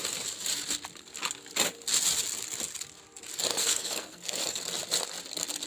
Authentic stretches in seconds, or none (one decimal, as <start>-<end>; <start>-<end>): 0.0-3.5; 4.6-5.7